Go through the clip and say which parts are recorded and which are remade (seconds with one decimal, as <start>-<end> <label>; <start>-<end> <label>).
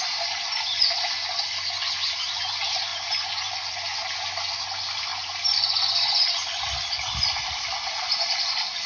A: 0.0-8.9 recorded